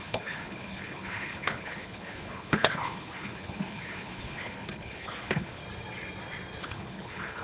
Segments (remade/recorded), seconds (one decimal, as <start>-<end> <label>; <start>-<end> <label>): 0.0-5.6 remade; 5.6-6.6 recorded; 6.6-7.4 remade